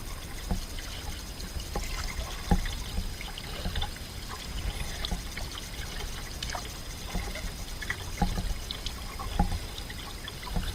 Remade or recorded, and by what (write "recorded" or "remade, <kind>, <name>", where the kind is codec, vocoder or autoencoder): recorded